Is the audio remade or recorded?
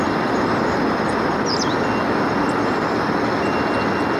recorded